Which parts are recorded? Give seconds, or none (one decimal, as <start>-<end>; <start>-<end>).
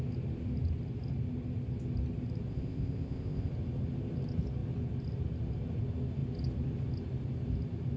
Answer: 0.0-2.5; 3.5-8.0